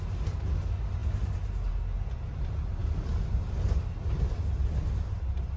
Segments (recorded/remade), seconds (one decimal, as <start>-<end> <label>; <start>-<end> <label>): 0.0-5.6 recorded